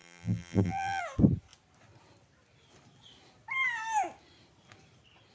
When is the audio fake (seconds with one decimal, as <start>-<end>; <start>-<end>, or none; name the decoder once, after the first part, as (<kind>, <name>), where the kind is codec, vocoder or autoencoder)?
0.0-1.0 (vocoder, BigVGAN v2)